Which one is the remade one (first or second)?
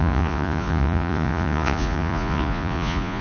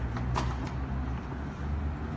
first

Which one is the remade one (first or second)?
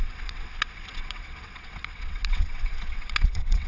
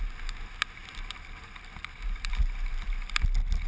first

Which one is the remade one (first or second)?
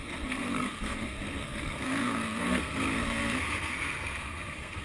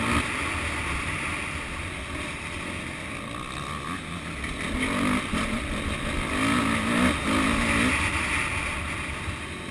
first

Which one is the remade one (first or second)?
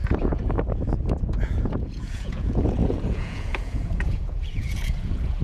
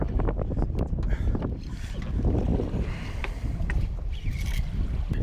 first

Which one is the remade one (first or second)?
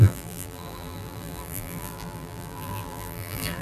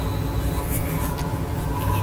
first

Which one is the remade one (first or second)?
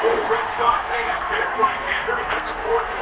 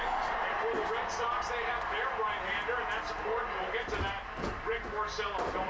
first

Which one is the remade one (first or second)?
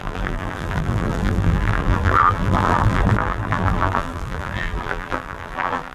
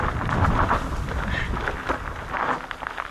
first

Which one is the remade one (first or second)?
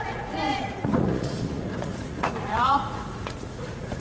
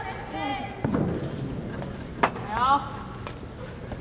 first